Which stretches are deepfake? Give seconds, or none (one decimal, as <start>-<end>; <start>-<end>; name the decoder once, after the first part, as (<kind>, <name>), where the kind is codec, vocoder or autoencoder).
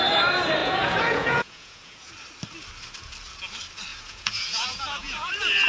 0.6-2.1 (vocoder, Vocos); 3.9-5.3